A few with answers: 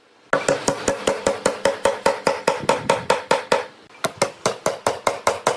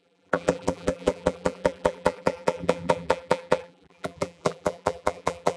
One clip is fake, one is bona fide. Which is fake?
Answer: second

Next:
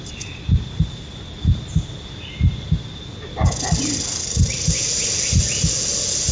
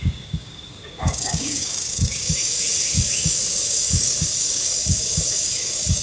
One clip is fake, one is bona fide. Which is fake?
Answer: second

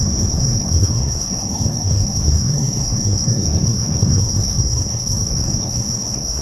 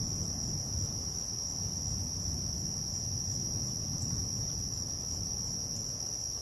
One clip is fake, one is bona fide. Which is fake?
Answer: first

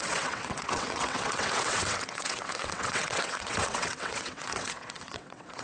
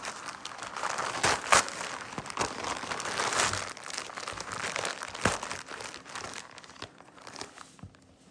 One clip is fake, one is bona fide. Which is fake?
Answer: first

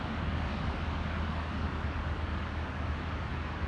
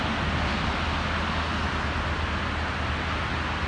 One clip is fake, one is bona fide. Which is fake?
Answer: first